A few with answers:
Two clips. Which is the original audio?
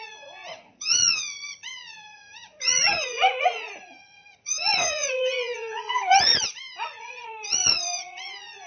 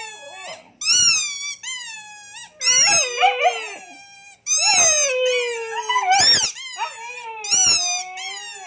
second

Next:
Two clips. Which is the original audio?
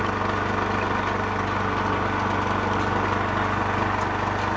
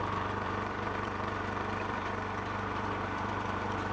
first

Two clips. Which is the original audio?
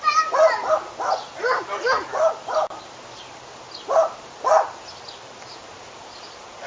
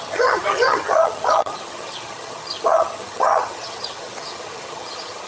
first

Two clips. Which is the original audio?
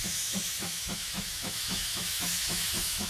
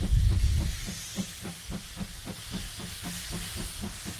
second